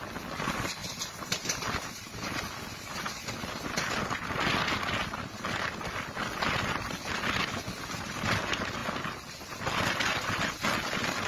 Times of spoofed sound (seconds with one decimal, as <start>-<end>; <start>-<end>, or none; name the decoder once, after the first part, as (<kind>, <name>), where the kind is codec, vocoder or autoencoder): none